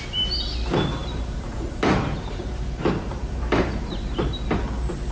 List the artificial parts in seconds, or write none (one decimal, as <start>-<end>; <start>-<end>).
1.0-3.8